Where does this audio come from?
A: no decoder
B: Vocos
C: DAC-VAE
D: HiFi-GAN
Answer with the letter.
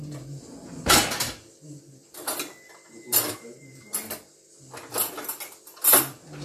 A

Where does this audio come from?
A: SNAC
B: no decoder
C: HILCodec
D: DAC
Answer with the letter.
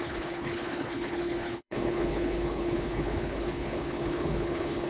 C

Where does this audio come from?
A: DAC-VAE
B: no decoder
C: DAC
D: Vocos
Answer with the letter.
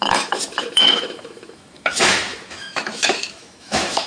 A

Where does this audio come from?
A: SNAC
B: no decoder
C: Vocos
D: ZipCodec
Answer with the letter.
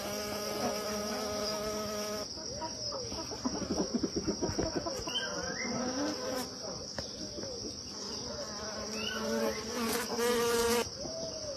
B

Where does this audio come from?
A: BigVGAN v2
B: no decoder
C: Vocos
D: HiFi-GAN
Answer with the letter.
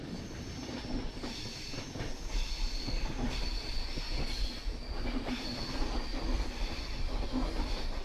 B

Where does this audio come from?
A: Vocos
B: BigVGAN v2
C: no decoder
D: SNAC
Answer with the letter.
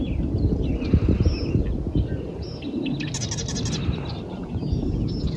C